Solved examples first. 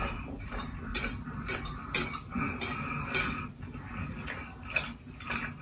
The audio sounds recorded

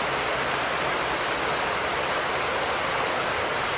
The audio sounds recorded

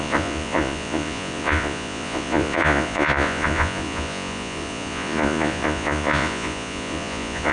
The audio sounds remade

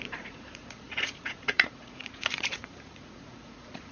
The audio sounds remade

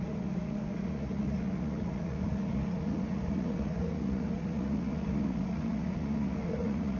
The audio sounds remade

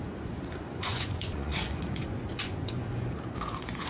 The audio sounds remade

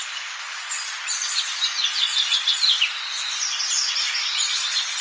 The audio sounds recorded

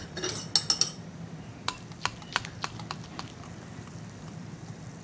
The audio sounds recorded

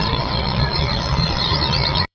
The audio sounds remade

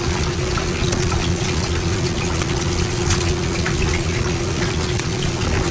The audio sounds remade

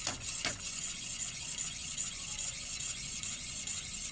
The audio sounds remade